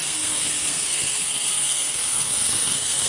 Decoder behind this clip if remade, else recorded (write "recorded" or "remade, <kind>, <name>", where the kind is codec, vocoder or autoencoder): remade, codec, SNAC